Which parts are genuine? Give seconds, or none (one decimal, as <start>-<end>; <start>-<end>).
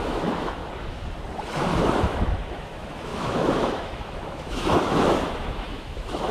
0.6-2.0